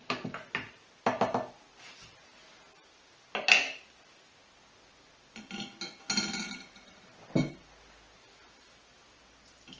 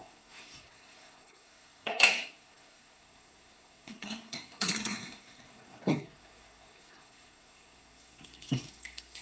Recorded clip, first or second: first